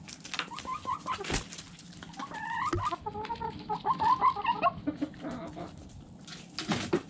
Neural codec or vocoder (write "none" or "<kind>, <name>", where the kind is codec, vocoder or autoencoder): none